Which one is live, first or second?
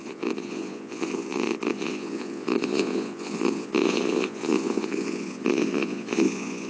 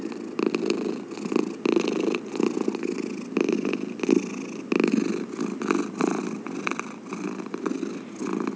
second